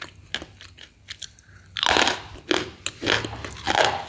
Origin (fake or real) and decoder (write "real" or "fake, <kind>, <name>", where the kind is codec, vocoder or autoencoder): real